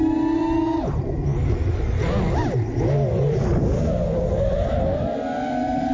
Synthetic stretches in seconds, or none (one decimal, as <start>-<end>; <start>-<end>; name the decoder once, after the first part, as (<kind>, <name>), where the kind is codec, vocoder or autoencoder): none